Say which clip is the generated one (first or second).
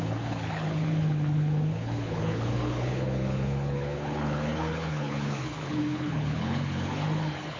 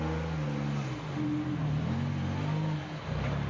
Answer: first